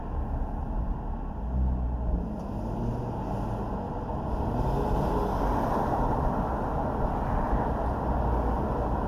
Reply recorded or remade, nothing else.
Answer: recorded